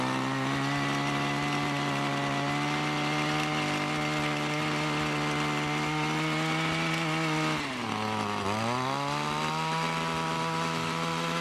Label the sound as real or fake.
real